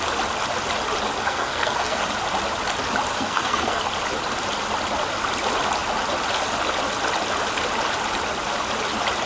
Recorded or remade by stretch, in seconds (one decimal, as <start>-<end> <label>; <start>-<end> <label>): 0.0-1.2 recorded; 1.2-2.0 remade; 2.0-3.1 recorded; 3.1-3.8 remade; 3.8-9.3 recorded